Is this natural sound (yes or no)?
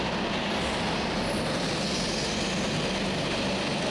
yes